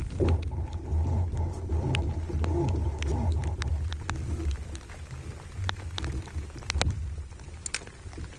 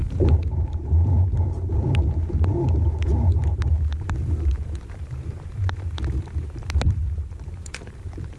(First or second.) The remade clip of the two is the second